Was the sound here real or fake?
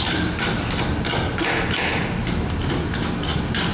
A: real